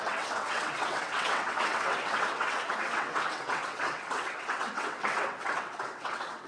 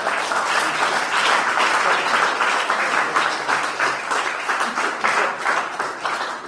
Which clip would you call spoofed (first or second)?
first